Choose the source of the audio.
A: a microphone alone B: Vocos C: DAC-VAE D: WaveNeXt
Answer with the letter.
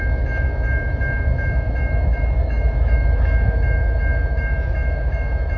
C